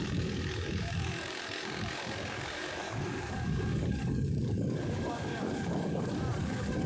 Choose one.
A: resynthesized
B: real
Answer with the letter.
A